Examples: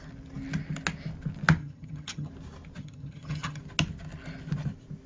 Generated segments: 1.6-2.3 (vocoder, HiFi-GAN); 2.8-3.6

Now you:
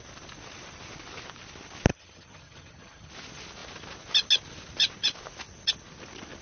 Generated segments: 1.9-3.1 (vocoder, HiFi-GAN)